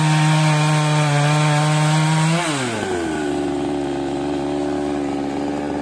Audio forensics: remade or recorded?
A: recorded